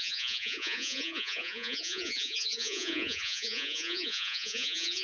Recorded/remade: remade